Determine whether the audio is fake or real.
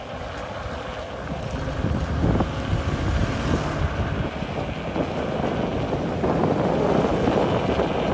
real